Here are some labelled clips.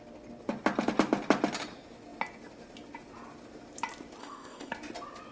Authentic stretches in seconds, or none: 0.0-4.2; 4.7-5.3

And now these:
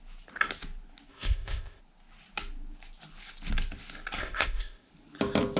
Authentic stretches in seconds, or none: 0.0-1.1; 1.8-4.2; 4.9-5.6

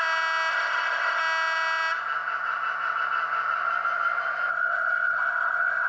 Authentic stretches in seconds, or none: 0.0-0.5; 1.2-4.5